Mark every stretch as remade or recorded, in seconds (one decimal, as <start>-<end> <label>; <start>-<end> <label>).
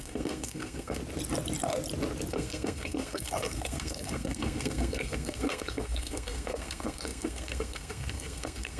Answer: 0.0-1.0 remade; 1.0-2.3 recorded; 2.3-8.8 remade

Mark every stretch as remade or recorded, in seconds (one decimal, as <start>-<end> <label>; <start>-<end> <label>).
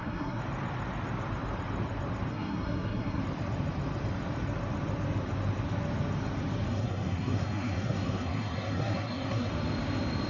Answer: 0.0-0.4 remade; 0.4-2.3 recorded; 2.3-3.2 remade; 3.2-6.7 recorded; 6.7-9.5 remade; 9.5-10.3 recorded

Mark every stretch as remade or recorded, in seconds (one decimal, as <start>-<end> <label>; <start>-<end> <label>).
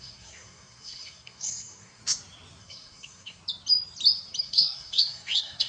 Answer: 0.0-2.0 remade; 2.0-2.6 recorded; 2.6-3.4 remade; 3.4-4.4 recorded; 4.4-5.7 remade